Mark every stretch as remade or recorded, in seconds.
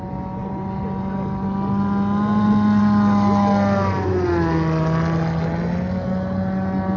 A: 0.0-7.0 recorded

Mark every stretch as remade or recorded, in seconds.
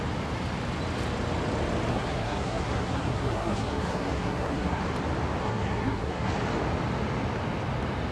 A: 0.0-1.9 recorded; 1.9-4.8 remade; 4.8-5.4 recorded; 5.4-6.3 remade; 6.3-8.1 recorded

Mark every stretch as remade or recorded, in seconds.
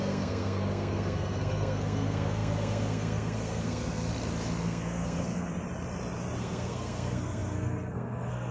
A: 0.0-4.1 remade; 4.1-4.6 recorded; 4.6-5.5 remade; 5.5-6.4 recorded; 6.4-8.5 remade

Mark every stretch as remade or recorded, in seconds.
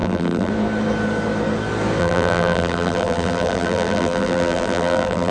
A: 0.0-0.5 remade; 0.5-2.0 recorded; 2.0-5.3 remade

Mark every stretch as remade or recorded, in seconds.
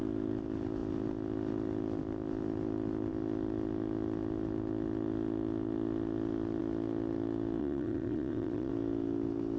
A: 0.0-7.6 recorded; 7.6-8.7 remade; 8.7-9.6 recorded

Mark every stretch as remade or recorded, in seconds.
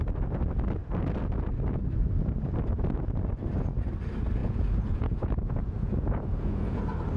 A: 0.0-4.4 recorded; 4.4-6.8 remade; 6.8-7.2 recorded